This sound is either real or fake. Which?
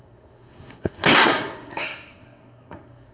fake